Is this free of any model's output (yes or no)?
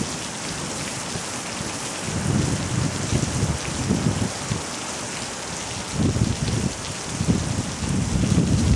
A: yes